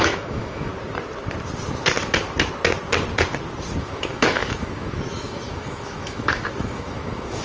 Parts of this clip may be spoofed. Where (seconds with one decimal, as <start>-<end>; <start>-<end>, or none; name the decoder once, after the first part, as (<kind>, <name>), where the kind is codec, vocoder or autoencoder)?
0.0-0.7 (autoencoder, DAC-VAE); 3.8-7.4